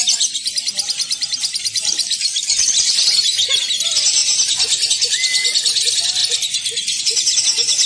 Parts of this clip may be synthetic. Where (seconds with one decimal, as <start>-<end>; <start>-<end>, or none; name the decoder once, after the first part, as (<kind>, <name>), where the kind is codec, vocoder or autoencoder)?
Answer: 0.0-3.0 (vocoder, BigVGAN v2); 4.2-4.9; 6.2-7.0